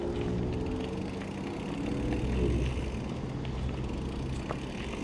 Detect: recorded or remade recorded